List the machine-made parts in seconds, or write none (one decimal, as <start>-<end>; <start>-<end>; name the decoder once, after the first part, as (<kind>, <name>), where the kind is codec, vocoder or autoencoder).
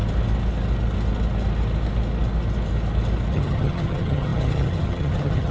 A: 3.3-5.5 (vocoder, HiFi-GAN)